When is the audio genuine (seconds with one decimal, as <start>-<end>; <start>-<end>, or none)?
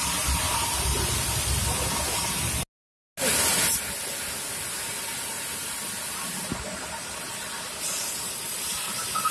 0.0-9.3